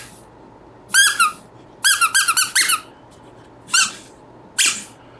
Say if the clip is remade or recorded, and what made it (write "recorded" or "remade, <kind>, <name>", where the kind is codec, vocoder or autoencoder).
recorded